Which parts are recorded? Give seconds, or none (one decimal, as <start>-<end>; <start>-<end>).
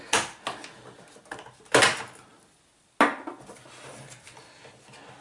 0.0-5.2